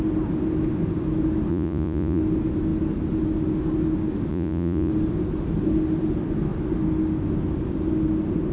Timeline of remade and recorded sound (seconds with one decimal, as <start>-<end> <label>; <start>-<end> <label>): 0.0-1.5 recorded; 1.5-2.2 remade; 2.2-4.3 recorded; 4.3-4.9 remade; 4.9-8.5 recorded